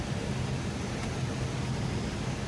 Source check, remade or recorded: recorded